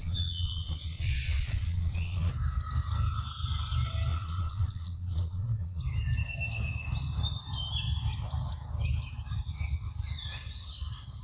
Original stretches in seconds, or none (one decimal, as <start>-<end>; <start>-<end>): 2.3-4.1; 5.8-11.2